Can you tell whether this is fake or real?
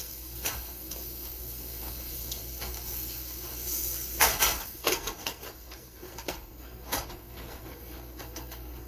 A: fake